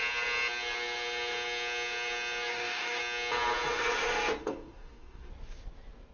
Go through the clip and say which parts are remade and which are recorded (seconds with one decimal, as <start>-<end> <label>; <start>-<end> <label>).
0.0-2.5 recorded; 2.5-3.0 remade; 3.0-4.4 recorded; 4.4-5.3 remade; 5.3-6.1 recorded